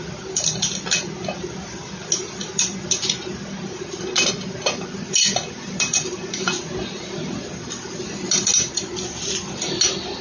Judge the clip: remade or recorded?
recorded